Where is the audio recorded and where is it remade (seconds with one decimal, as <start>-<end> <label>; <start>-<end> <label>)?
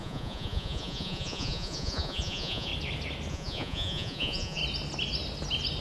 0.0-2.7 remade; 2.7-3.3 recorded; 3.3-4.6 remade; 4.6-5.8 recorded